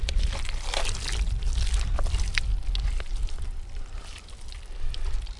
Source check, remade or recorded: recorded